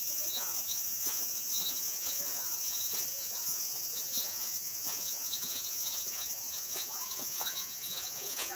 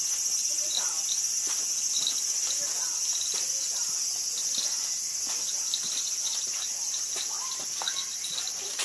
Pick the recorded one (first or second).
second